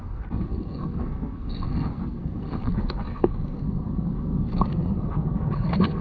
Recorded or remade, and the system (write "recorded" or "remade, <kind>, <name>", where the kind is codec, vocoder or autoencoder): remade, codec, SNAC